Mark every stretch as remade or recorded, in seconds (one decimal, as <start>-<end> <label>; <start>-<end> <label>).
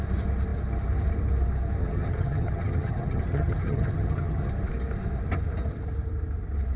0.0-1.8 recorded; 1.8-4.5 remade; 4.5-6.8 recorded